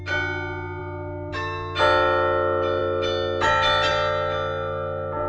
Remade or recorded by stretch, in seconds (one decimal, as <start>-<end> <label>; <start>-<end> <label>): 0.0-5.3 recorded

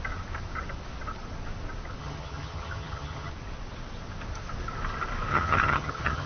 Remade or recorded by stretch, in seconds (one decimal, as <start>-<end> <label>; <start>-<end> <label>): 0.0-2.0 recorded; 2.0-3.3 remade; 3.3-5.3 recorded; 5.3-6.3 remade

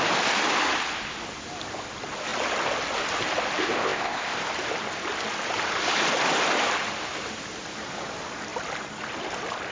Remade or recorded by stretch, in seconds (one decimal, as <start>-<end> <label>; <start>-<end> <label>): 0.0-3.6 recorded; 3.6-4.4 remade; 4.4-9.7 recorded

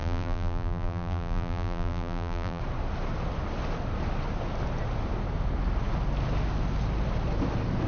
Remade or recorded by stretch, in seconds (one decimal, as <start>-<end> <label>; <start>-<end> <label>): 0.0-2.6 remade; 2.6-7.9 recorded

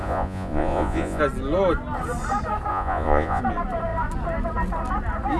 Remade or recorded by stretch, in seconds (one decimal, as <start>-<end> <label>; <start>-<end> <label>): 0.0-1.2 remade; 1.2-2.7 recorded; 2.7-3.4 remade; 3.4-5.4 recorded